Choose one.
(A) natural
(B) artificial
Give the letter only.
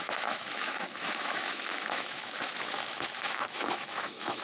B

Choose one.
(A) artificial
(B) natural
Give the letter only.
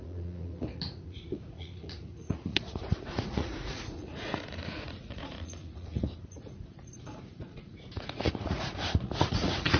A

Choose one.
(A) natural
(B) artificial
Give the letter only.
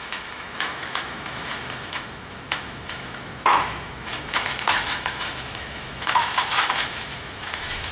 B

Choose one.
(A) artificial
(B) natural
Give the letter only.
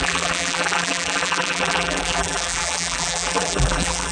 A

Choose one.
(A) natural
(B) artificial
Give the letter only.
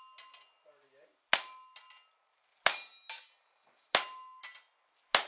A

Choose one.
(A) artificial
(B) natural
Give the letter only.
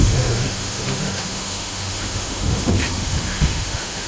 A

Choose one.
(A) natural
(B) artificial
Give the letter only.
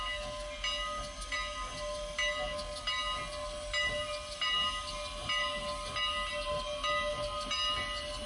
A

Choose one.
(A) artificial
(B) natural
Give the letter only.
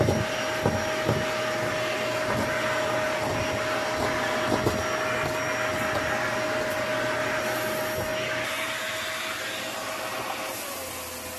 B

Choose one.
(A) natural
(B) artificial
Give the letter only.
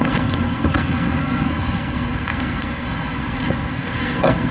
B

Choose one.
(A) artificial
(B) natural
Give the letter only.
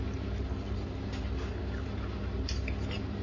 B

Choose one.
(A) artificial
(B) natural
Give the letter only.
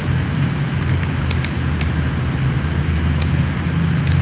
B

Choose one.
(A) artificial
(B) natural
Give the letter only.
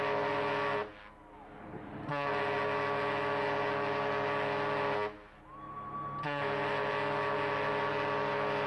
B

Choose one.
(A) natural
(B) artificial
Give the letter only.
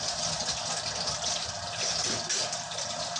A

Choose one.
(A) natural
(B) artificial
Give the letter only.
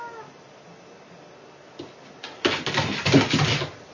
A